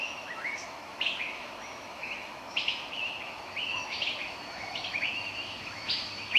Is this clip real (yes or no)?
no